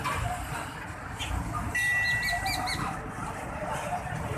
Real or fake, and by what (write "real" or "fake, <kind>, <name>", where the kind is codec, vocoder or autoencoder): real